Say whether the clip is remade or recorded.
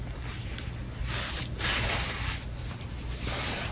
recorded